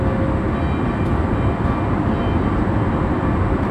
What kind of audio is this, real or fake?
real